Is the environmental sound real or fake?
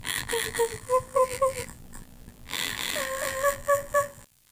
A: fake